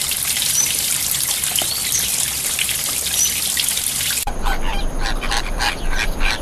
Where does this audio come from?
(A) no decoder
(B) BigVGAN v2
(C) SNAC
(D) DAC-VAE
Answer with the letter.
A